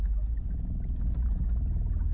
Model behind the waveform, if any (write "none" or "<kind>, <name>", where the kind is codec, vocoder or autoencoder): none